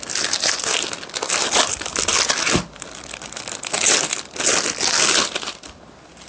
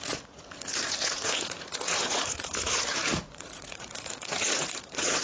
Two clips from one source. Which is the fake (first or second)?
second